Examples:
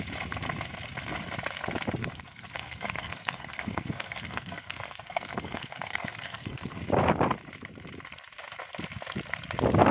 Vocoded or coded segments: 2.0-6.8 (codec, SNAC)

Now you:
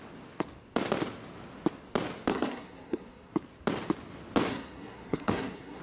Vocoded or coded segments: 2.3-3.3 (codec, SNAC); 4.5-5.8

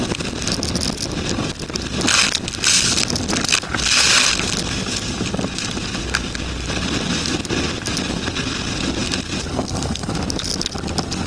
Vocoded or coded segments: 9.5-10.1 (codec, SNAC)

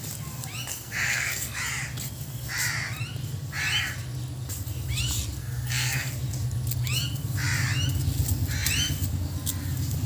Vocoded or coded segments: 0.7-1.6 (codec, SNAC); 5.4-6.1

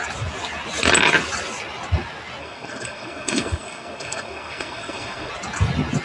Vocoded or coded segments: 2.4-5.3 (codec, SNAC)